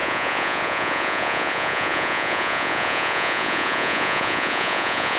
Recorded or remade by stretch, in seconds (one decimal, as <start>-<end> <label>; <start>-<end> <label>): 0.0-5.2 remade